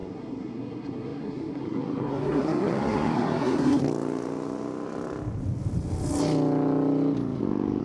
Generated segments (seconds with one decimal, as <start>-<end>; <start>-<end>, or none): 0.0-3.8